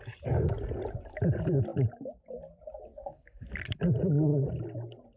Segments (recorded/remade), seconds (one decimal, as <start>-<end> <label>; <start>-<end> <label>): 0.0-5.2 recorded